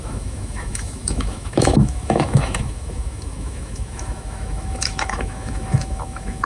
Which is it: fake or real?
fake